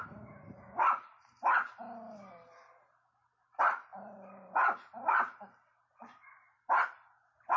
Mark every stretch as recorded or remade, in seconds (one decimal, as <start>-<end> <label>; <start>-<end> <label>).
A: 0.0-1.1 recorded; 1.1-1.8 remade; 1.8-3.9 recorded; 3.9-6.4 remade; 6.4-7.6 recorded